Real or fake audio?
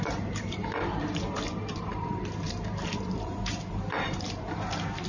fake